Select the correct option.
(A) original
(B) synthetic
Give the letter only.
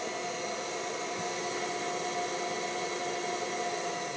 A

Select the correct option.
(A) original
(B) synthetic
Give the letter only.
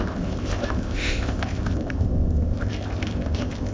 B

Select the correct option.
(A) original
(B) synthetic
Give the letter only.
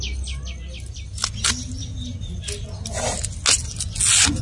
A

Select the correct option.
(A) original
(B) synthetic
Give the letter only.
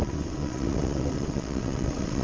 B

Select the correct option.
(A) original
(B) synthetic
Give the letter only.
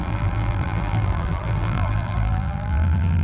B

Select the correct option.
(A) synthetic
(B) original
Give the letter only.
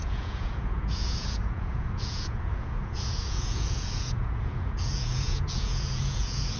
A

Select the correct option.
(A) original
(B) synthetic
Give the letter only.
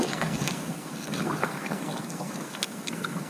B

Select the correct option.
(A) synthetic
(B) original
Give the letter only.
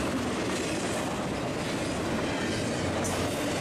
B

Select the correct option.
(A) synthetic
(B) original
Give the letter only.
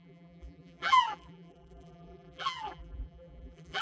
A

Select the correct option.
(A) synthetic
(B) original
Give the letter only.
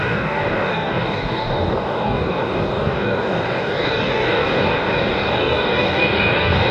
A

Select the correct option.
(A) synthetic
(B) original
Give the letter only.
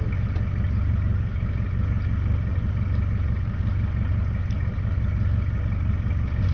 B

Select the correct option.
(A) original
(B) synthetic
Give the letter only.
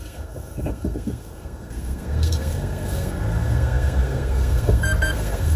B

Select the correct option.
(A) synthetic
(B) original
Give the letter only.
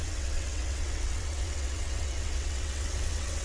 A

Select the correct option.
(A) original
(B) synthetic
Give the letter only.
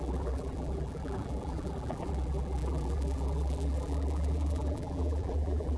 B